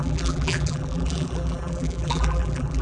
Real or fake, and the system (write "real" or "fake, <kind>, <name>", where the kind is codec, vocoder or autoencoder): fake, vocoder, BigVGAN v2